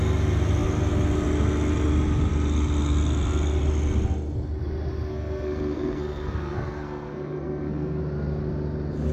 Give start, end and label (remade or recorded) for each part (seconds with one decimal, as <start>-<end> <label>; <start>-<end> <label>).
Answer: 0.0-5.1 recorded; 5.1-8.0 remade; 8.0-9.1 recorded